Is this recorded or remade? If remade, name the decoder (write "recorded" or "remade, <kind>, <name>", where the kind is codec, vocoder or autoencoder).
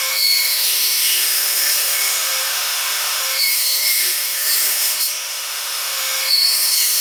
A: remade, autoencoder, DAC-VAE